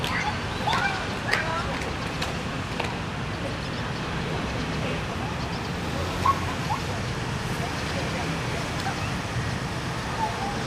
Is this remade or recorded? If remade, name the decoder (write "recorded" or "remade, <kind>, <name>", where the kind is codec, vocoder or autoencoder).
recorded